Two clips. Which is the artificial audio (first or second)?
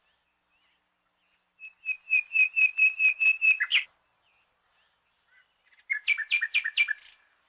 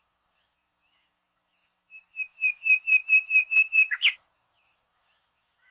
second